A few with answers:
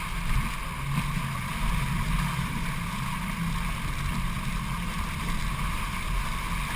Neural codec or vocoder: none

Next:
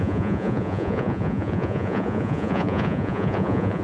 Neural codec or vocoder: vocoder, Vocos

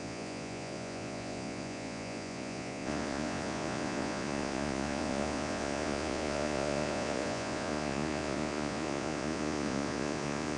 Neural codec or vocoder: vocoder, Vocos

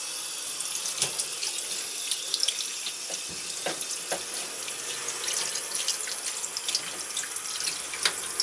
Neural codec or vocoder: none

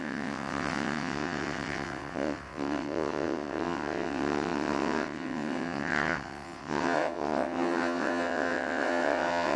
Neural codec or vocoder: vocoder, WaveNeXt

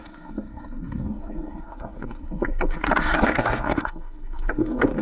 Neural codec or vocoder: codec, SNAC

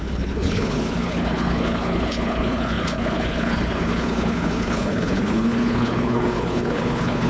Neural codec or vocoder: codec, HILCodec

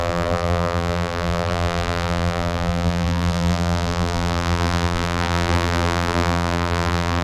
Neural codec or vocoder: vocoder, BigVGAN v2